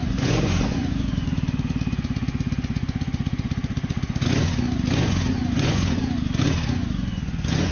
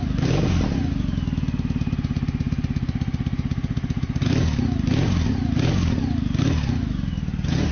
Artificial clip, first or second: first